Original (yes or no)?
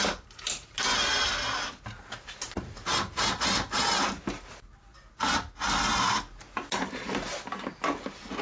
yes